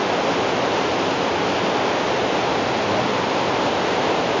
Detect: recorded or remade recorded